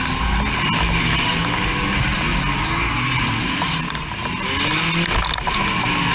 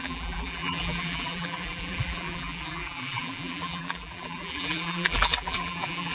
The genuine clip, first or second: first